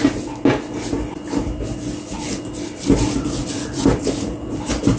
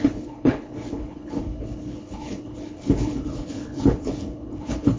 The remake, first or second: second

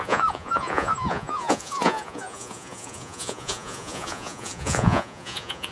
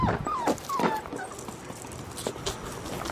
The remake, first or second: first